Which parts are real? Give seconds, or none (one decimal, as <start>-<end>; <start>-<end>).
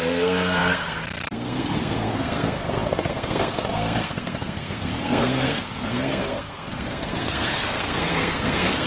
none